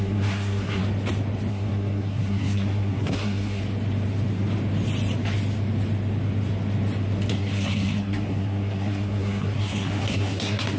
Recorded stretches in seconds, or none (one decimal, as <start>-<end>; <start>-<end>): 0.8-1.5; 3.6-7.3